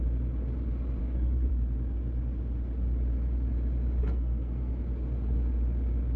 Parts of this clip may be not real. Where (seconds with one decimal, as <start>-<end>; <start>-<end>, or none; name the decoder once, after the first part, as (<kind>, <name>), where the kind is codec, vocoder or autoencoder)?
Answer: 1.0-1.5 (codec, SNAC); 4.0-4.7